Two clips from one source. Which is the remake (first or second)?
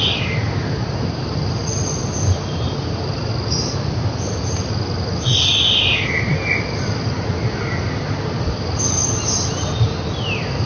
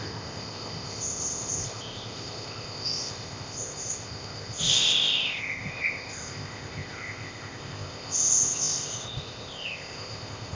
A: second